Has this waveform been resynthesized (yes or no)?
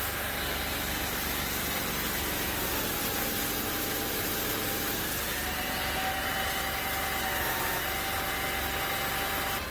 no